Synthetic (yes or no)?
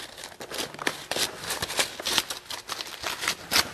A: no